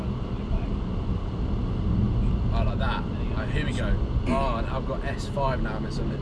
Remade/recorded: recorded